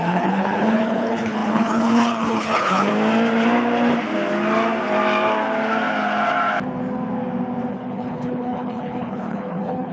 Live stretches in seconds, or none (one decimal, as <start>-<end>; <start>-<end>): 2.9-7.7